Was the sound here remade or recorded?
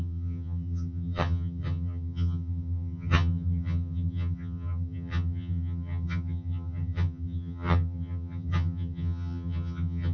remade